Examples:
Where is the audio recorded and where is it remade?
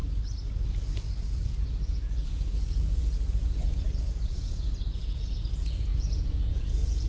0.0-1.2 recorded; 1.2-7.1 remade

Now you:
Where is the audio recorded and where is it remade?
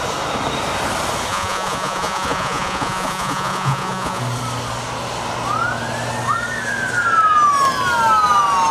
0.0-1.3 recorded; 1.3-4.2 remade; 4.2-8.7 recorded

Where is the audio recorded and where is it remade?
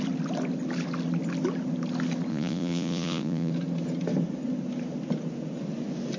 0.0-2.3 recorded; 2.3-3.5 remade; 3.5-6.2 recorded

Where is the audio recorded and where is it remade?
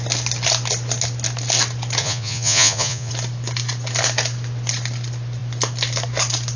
0.0-2.0 recorded; 2.0-3.1 remade; 3.1-6.6 recorded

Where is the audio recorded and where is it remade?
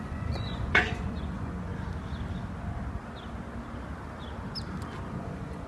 0.0-1.7 remade; 1.7-5.1 recorded; 5.1-5.7 remade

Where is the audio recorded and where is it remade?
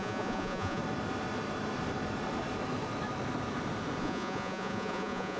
0.0-0.8 remade; 0.8-4.0 recorded; 4.0-5.4 remade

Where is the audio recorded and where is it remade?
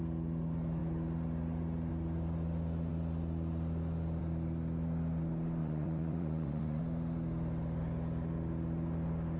0.0-5.6 recorded; 5.6-6.8 remade; 6.8-9.4 recorded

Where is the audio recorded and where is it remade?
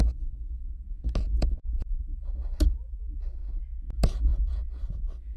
0.0-1.3 recorded; 1.3-2.0 remade; 2.0-3.4 recorded; 3.4-3.9 remade; 3.9-4.3 recorded; 4.3-4.8 remade; 4.8-5.4 recorded